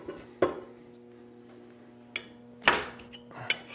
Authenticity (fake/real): real